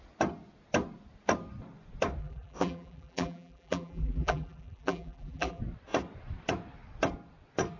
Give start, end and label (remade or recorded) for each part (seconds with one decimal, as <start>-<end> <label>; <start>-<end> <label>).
0.0-2.2 recorded; 2.2-5.6 remade; 5.6-7.8 recorded